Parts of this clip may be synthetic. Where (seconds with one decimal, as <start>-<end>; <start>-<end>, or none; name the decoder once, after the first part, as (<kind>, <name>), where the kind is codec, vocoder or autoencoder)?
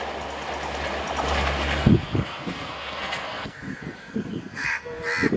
1.8-5.0 (codec, SNAC)